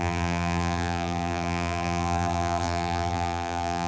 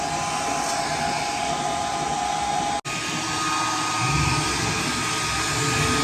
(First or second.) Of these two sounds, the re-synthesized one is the first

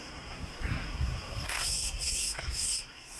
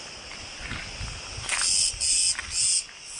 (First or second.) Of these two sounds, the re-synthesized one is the first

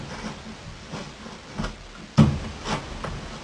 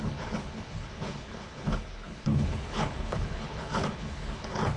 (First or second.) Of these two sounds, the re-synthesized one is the second